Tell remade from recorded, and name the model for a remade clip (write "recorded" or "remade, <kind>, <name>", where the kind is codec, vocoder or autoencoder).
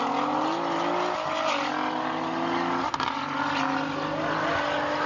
recorded